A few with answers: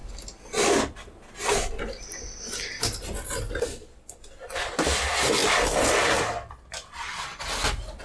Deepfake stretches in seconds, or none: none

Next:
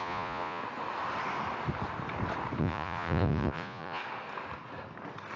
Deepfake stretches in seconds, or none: 0.0-0.6 (vocoder, Vocos); 2.6-4.0

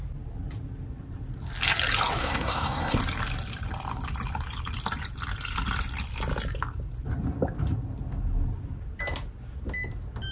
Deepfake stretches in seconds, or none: 2.2-3.0 (codec, SNAC)

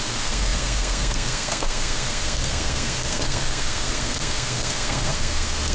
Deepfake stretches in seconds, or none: 0.0-5.7 (codec, SNAC)

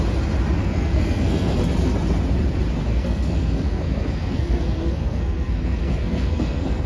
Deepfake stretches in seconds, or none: 0.6-1.6 (codec, SNAC); 2.9-6.9